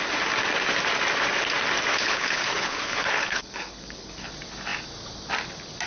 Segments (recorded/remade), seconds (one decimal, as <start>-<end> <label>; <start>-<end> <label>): 0.0-1.9 recorded; 1.9-4.3 remade; 4.3-5.9 recorded